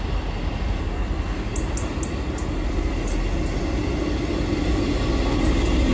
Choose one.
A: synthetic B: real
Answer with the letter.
B